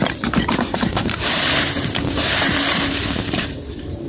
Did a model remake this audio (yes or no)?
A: yes